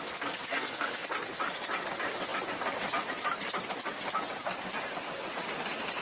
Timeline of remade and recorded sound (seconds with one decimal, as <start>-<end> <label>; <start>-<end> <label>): 0.0-0.5 recorded; 0.5-1.4 remade; 1.4-6.0 recorded